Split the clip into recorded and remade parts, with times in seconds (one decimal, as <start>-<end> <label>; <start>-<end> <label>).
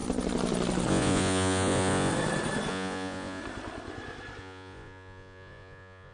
0.0-0.9 recorded; 0.9-2.1 remade; 2.1-2.7 recorded; 2.7-3.4 remade; 3.4-4.4 recorded; 4.4-6.1 remade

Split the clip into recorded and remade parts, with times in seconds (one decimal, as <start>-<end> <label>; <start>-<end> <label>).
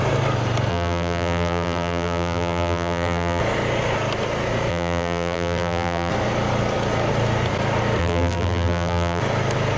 0.0-0.7 recorded; 0.7-3.4 remade; 3.4-4.7 recorded; 4.7-6.1 remade; 6.1-8.0 recorded; 8.0-9.2 remade; 9.2-9.8 recorded